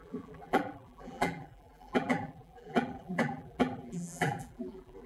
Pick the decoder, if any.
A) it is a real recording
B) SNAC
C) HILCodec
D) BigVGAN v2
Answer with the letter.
D